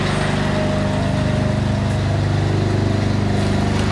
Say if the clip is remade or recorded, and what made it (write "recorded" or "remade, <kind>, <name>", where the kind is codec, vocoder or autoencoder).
recorded